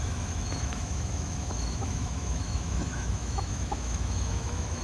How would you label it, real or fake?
fake